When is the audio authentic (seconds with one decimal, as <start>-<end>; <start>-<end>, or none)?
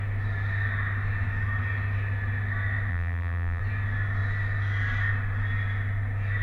0.0-2.9; 3.6-6.4